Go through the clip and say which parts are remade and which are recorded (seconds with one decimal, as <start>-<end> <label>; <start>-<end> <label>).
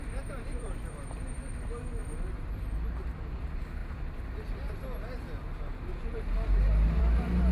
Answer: 0.0-2.0 recorded; 2.0-2.6 remade; 2.6-3.8 recorded; 3.8-4.7 remade; 4.7-7.5 recorded